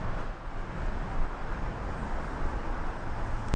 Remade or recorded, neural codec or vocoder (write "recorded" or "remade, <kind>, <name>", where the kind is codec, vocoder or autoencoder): recorded